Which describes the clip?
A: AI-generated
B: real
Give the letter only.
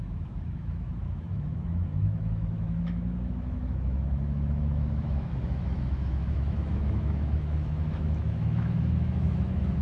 A